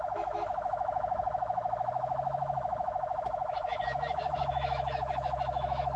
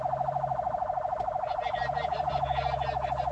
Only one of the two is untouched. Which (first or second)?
second